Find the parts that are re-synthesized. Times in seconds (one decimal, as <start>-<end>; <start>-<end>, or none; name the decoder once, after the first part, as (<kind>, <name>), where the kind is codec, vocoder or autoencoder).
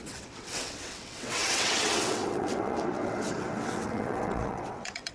0.0-5.1 (vocoder, WaveNeXt)